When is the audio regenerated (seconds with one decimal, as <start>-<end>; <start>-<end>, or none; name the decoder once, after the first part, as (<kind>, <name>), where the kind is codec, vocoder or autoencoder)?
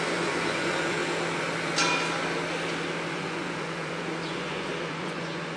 0.0-1.0 (vocoder, Vocos); 3.1-5.6